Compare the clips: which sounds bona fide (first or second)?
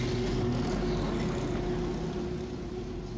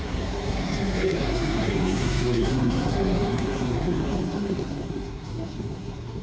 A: first